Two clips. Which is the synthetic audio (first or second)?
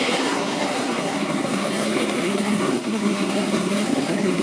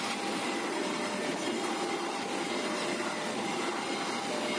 first